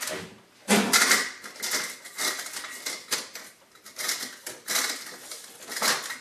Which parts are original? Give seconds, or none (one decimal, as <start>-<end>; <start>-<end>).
0.0-6.2

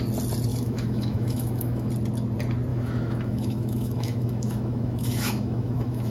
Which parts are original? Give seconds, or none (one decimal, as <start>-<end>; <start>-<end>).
0.0-0.5; 1.9-2.7

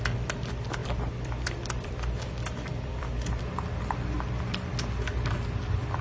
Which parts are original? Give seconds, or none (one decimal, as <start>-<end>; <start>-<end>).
0.0-0.8; 4.4-6.0

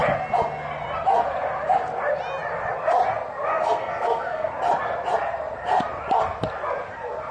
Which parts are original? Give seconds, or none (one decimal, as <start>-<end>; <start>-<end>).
0.0-3.5; 4.5-7.3

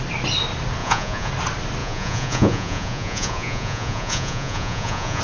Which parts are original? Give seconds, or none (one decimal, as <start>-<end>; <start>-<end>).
0.0-0.8; 1.3-1.8

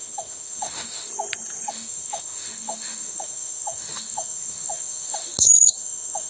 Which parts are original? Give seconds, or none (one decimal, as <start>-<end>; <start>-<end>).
1.1-1.7

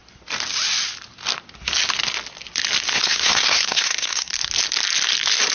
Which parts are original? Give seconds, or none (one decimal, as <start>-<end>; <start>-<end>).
0.0-2.9; 4.3-5.5